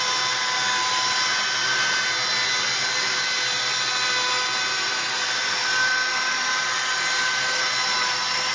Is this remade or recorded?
recorded